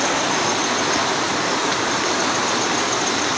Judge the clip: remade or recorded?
recorded